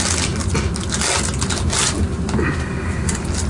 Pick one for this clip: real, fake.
real